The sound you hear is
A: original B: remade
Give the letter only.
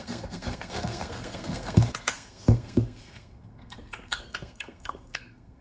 B